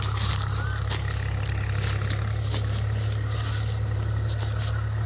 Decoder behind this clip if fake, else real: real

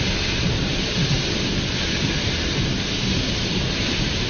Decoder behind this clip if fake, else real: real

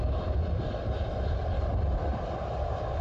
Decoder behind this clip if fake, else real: real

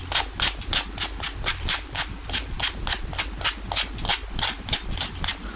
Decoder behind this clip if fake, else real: real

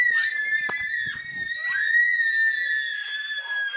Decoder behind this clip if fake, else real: real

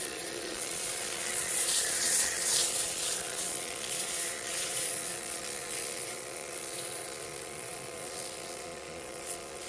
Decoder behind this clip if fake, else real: fake, vocoder, Vocos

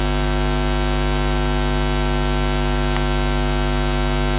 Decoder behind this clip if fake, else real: real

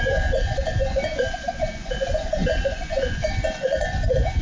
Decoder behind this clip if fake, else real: fake, vocoder, Vocos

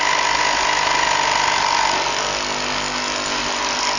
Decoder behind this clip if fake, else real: real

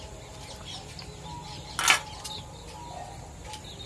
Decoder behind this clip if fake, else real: real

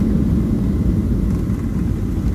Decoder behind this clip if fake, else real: real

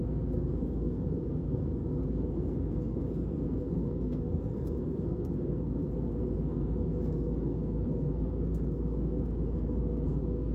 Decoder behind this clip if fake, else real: fake, codec, SNAC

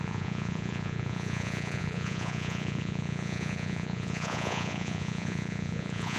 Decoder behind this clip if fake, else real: fake, vocoder, Vocos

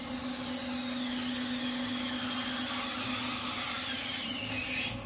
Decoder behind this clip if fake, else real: real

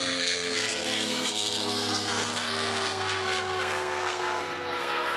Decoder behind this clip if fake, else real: fake, codec, SNAC